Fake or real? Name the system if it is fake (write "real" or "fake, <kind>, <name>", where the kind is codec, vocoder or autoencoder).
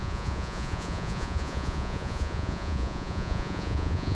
fake, vocoder, Vocos